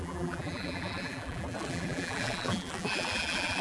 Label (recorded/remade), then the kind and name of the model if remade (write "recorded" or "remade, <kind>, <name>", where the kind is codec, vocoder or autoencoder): remade, vocoder, BigVGAN v2